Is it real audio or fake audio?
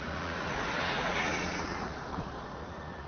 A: fake